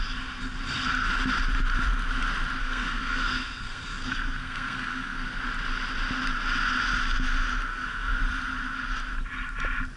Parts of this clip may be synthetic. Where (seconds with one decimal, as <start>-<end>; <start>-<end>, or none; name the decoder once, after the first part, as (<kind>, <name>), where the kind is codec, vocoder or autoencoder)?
2.6-5.4 (codec, SNAC); 7.7-8.2